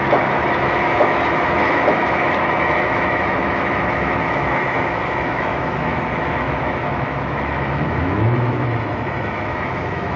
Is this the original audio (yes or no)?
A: no